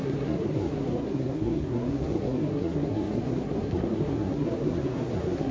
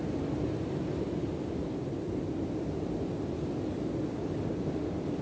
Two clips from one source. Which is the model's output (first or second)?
first